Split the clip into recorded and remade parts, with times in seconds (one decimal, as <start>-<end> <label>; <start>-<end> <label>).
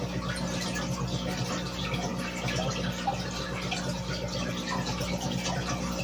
0.0-6.0 recorded